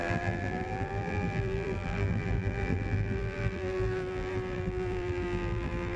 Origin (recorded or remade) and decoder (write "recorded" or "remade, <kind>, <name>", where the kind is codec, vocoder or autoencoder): remade, vocoder, BigVGAN v2